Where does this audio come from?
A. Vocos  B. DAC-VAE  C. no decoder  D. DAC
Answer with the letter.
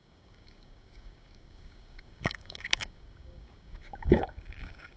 D